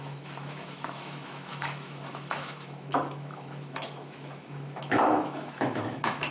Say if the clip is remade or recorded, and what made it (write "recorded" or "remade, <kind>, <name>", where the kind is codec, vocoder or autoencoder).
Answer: remade, autoencoder, DAC-VAE